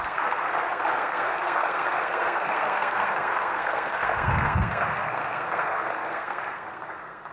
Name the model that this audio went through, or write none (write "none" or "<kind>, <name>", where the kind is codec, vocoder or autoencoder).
codec, SNAC